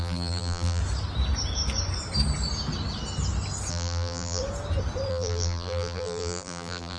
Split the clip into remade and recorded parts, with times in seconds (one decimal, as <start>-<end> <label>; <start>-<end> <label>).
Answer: 0.0-0.8 remade; 0.8-3.7 recorded; 3.7-4.4 remade; 4.4-5.1 recorded; 5.1-7.0 remade